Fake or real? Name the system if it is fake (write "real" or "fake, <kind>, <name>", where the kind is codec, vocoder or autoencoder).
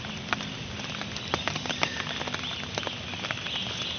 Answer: real